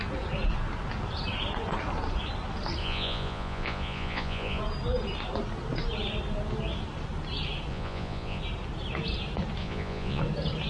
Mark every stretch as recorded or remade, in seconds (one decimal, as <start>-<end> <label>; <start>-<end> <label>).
0.0-2.8 recorded; 2.8-4.6 remade; 4.6-7.7 recorded; 7.7-8.4 remade; 8.4-9.6 recorded; 9.6-10.2 remade; 10.2-10.7 recorded